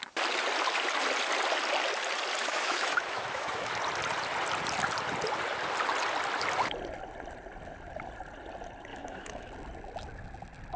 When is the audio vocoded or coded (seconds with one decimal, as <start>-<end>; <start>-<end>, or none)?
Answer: 2.4-3.7; 8.9-9.5